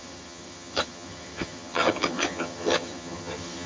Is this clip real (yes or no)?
no